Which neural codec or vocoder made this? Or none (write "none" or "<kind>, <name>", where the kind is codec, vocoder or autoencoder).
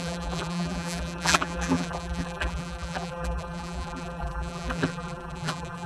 vocoder, BigVGAN v2